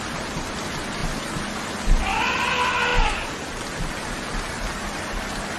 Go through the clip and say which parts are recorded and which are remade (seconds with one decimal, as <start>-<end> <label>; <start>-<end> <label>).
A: 0.0-5.6 recorded